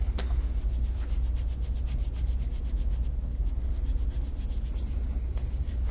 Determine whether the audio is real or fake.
real